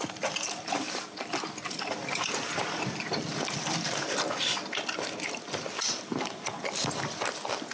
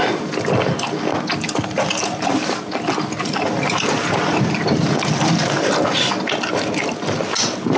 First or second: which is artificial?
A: first